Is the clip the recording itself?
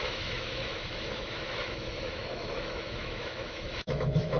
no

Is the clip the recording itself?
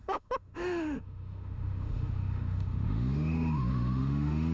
no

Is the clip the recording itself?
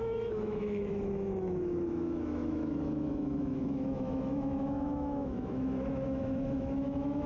no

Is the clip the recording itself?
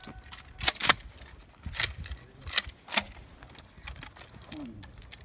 yes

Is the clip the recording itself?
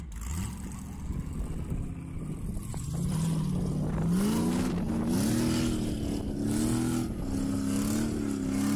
yes